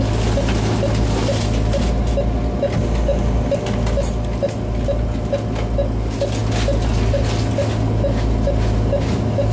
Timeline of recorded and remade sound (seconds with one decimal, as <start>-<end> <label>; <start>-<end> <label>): 0.0-9.5 recorded

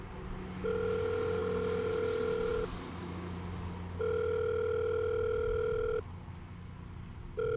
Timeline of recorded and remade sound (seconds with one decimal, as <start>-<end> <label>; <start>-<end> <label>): 0.0-7.6 recorded

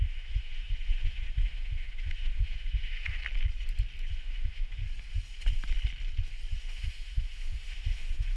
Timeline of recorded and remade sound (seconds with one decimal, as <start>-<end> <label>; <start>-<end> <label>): 0.0-3.2 remade; 3.2-4.1 recorded; 4.1-4.8 remade; 4.8-6.6 recorded; 6.6-8.4 remade

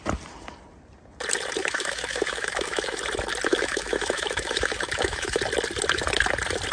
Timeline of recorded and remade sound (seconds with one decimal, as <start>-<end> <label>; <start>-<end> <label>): 0.0-1.6 recorded; 1.6-3.0 remade; 3.0-3.5 recorded; 3.5-5.4 remade; 5.4-6.7 recorded

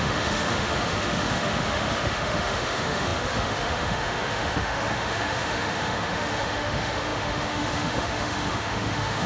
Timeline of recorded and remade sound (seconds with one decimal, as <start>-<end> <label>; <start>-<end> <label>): 0.0-9.3 remade

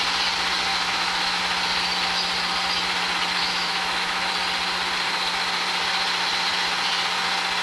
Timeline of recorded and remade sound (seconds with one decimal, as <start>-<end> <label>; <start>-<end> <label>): 0.0-0.7 recorded; 0.7-1.4 remade; 1.4-3.4 recorded; 3.4-4.3 remade; 4.3-7.6 recorded

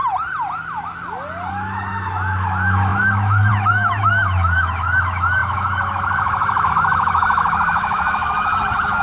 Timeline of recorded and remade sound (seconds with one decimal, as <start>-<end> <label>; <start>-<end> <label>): 0.0-1.5 recorded; 1.5-9.0 remade